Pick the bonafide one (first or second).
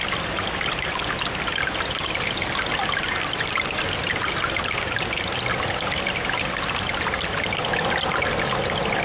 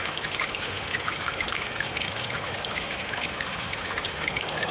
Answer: first